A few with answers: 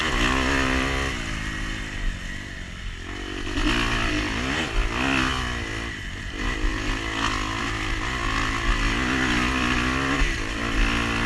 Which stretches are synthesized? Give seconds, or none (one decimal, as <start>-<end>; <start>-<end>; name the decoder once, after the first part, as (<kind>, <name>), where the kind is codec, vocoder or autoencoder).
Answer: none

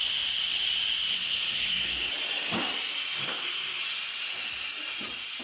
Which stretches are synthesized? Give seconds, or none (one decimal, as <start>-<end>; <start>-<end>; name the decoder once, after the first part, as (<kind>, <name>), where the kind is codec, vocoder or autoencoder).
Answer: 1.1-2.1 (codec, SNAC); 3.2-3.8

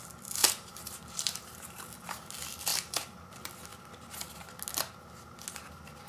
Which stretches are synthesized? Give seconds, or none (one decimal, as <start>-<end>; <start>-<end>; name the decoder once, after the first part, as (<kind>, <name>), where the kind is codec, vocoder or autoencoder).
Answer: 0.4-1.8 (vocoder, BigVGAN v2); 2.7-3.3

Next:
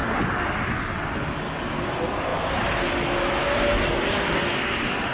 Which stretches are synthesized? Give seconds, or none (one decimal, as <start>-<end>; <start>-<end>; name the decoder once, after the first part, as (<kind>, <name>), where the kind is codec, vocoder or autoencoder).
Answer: none